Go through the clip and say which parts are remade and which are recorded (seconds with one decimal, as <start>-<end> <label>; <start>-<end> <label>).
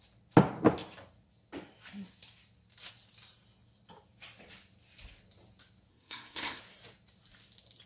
0.0-5.9 recorded; 5.9-6.6 remade; 6.6-7.9 recorded